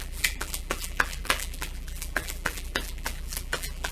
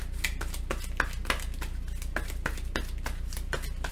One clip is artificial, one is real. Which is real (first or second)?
second